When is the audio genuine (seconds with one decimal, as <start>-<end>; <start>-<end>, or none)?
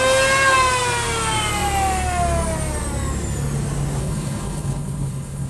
0.0-4.0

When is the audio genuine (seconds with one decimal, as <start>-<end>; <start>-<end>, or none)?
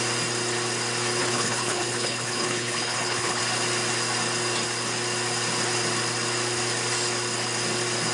0.0-1.2; 3.4-8.1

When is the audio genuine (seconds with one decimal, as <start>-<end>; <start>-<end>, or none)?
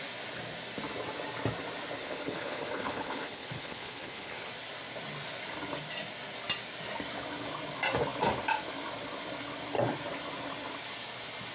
0.0-2.0; 4.5-11.5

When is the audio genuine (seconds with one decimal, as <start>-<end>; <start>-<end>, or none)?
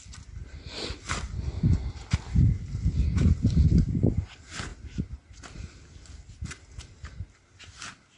0.0-8.2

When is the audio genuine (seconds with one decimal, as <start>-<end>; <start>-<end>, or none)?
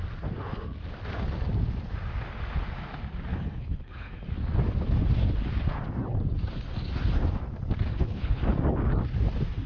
0.0-3.3; 4.2-7.9; 8.4-9.7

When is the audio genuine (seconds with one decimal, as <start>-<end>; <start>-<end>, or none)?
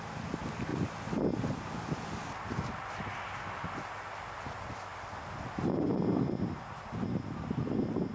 0.0-8.1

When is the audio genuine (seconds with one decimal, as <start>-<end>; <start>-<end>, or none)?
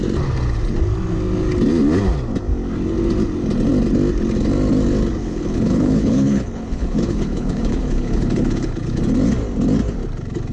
0.0-5.2; 9.0-10.5